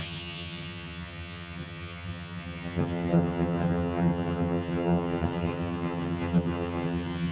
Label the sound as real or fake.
fake